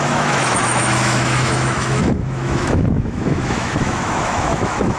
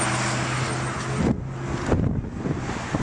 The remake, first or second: first